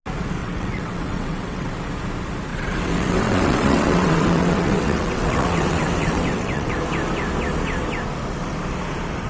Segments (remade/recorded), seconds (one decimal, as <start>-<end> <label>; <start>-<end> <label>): 0.0-0.4 recorded; 0.4-1.7 remade; 1.7-2.5 recorded; 2.5-6.7 remade; 6.7-9.3 recorded